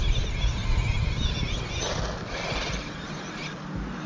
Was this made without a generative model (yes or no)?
yes